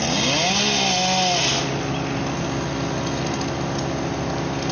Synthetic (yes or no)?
no